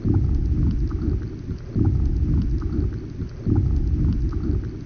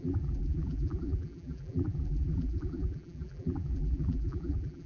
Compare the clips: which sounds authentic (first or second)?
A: first